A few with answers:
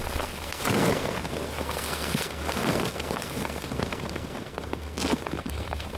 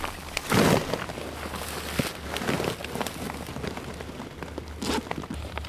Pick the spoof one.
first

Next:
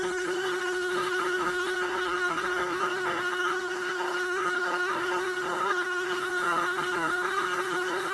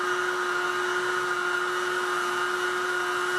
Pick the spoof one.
first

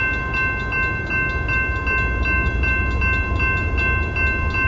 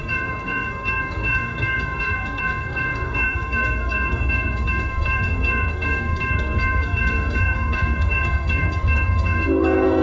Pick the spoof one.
second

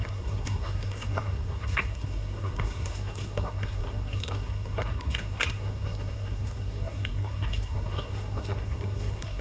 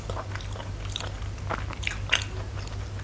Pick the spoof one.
first